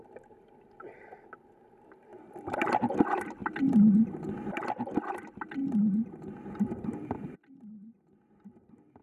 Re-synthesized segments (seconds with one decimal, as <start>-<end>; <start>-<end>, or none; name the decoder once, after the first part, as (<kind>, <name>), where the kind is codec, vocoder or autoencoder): 5.6-8.0 (vocoder, BigVGAN v2)